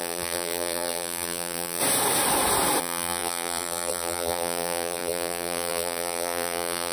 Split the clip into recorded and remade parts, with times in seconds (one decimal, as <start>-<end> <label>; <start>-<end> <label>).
0.0-1.8 remade; 1.8-2.8 recorded; 2.8-6.9 remade